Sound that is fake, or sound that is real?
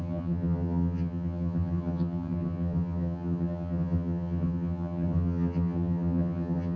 fake